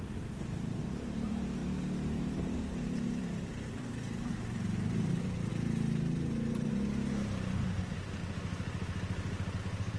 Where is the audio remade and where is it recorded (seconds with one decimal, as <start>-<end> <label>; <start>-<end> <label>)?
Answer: 0.0-5.5 remade; 5.5-7.1 recorded; 7.1-8.2 remade; 8.2-9.6 recorded; 9.6-10.0 remade